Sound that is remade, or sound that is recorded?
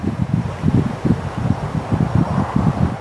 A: recorded